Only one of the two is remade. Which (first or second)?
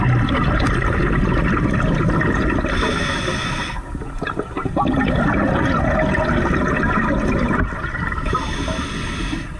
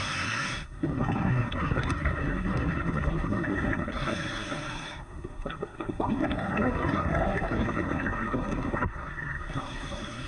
second